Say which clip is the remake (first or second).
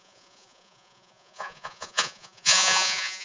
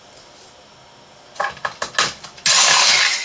first